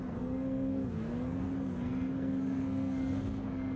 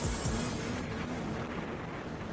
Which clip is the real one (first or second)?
second